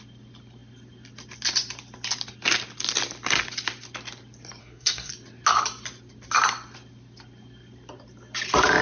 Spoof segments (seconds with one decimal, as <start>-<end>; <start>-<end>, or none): 4.6-5.1